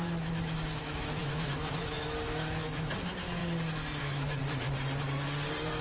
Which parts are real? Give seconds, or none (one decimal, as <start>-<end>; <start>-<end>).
3.4-4.0; 4.4-5.8